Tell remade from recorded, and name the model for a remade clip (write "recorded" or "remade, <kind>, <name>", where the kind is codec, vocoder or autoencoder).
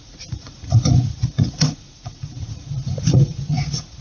remade, vocoder, Vocos